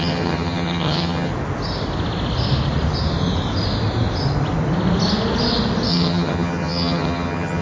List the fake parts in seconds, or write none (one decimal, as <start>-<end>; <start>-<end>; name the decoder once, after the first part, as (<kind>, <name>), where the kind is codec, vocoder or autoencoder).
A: 0.0-1.3 (vocoder, HiFi-GAN); 5.9-7.6